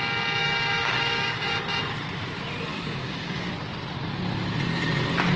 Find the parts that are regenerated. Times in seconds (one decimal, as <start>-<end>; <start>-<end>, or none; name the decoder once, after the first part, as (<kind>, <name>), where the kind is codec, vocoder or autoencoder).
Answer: 0.4-1.6 (codec, DAC); 2.7-3.5